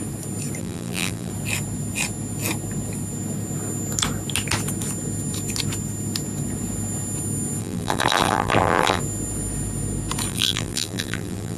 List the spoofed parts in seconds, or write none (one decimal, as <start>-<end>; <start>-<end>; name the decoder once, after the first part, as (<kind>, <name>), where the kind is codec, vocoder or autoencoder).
0.6-1.3 (vocoder, BigVGAN v2); 7.6-9.0; 10.3-11.6